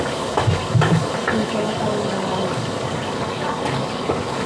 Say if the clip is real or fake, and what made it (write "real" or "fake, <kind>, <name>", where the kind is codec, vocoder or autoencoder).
fake, codec, DAC